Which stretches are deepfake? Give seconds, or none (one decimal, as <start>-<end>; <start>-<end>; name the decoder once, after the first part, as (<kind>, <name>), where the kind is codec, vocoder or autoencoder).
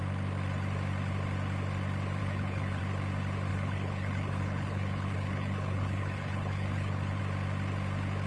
2.2-2.8 (codec, HILCodec); 3.5-7.2